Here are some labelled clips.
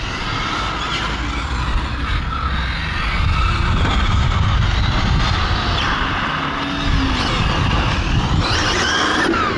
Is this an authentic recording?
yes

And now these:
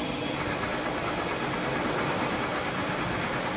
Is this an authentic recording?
yes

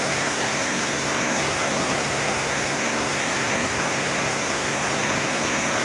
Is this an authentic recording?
no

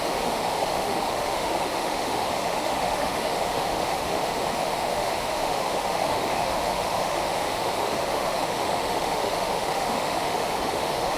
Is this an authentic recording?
no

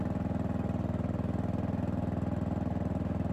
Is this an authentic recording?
yes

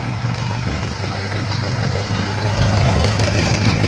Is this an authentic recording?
no